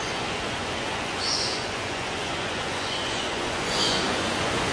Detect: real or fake fake